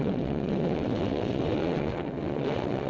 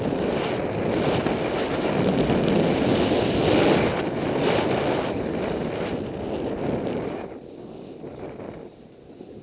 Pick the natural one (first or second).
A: second